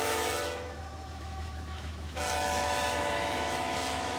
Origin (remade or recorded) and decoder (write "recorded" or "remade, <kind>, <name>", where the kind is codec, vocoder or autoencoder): remade, autoencoder, DAC-VAE